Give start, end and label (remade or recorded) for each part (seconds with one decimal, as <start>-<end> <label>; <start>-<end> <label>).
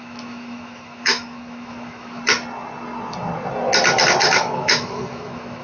0.0-2.2 remade; 2.2-4.2 recorded; 4.2-5.6 remade